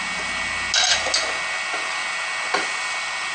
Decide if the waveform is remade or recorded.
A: recorded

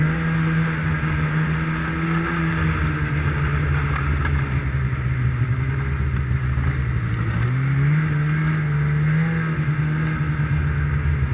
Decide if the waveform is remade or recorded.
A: recorded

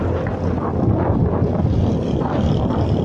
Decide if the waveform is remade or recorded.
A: recorded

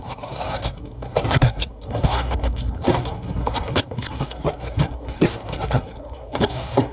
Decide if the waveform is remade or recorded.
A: remade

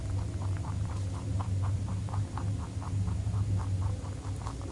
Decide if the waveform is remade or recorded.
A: recorded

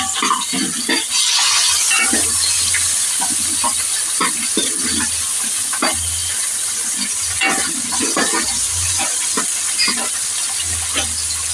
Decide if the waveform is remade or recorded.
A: recorded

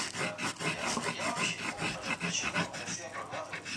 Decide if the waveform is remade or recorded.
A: recorded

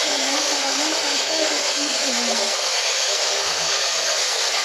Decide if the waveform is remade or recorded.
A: remade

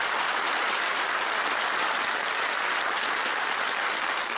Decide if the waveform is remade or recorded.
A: recorded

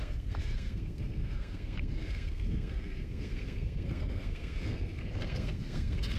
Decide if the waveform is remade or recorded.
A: remade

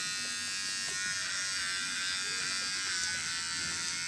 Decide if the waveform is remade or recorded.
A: recorded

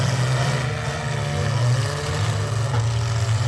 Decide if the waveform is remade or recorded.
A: recorded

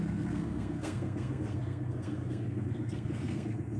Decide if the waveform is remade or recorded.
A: remade